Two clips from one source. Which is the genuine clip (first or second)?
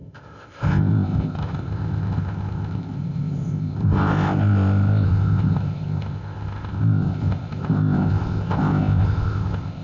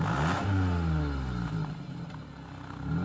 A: second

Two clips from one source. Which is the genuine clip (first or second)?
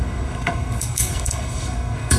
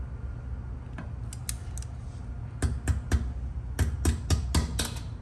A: second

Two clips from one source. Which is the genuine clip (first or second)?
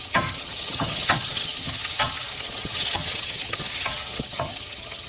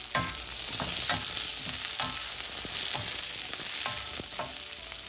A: second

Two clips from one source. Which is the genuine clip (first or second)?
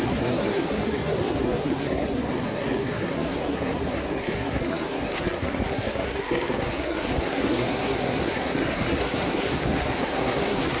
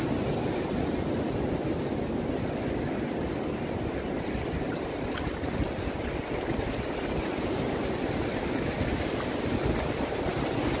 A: second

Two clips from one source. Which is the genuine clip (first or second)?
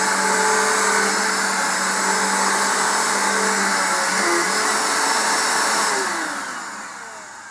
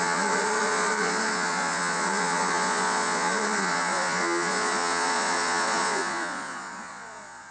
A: first